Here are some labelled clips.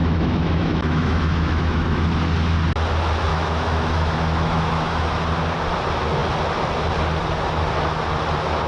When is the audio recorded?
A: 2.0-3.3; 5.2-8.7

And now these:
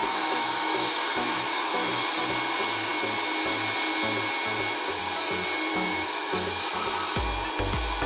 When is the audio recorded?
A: 2.2-5.7; 6.7-8.1

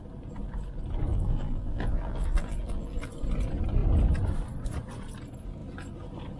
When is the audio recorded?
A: 0.0-1.1; 3.1-6.4

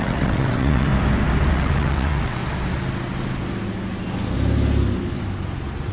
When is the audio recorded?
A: 0.9-1.5; 2.4-5.9

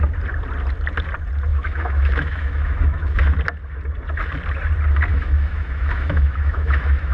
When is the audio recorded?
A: 0.0-1.5; 3.2-5.1

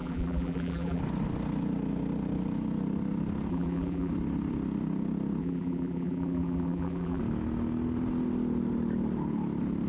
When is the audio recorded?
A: 1.0-3.5; 4.1-5.4; 7.2-9.9